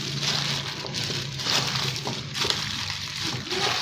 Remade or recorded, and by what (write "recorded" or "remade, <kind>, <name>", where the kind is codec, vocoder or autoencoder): remade, vocoder, BigVGAN v2